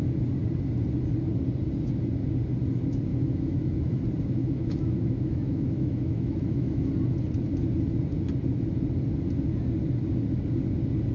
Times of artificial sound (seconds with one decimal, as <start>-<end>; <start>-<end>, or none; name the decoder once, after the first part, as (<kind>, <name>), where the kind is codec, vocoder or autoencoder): 3.1-4.0 (autoencoder, DAC-VAE); 4.4-6.9